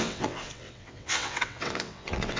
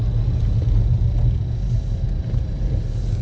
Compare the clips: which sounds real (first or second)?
second